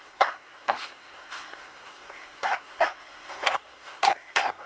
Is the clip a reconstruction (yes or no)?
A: yes